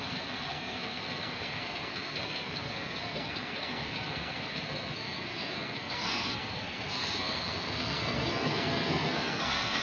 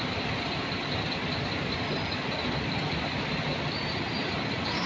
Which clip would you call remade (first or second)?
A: first